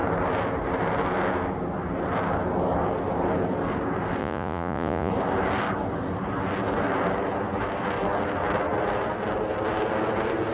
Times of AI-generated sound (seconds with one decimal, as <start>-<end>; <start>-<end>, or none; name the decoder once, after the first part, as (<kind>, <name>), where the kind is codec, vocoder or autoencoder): 4.2-5.1 (vocoder, Vocos)